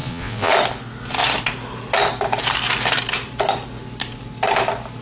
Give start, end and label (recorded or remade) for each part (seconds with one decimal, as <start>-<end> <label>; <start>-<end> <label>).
0.0-0.5 remade; 0.5-5.0 recorded